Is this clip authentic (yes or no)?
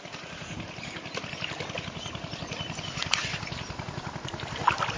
yes